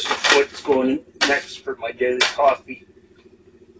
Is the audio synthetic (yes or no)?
no